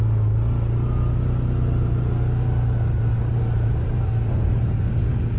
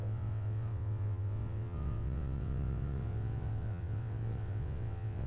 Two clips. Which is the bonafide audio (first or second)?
first